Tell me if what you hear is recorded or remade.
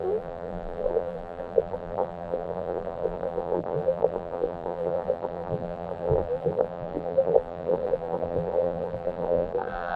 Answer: remade